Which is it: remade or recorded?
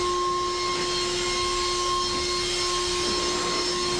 recorded